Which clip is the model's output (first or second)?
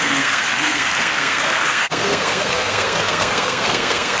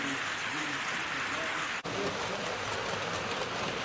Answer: first